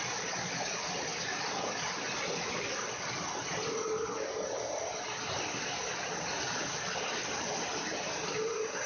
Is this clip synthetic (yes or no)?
no